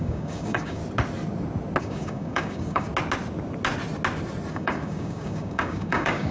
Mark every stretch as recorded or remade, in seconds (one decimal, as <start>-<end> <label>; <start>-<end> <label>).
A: 0.0-0.8 remade; 0.8-1.8 recorded; 1.8-2.9 remade; 2.9-4.5 recorded; 4.5-6.3 remade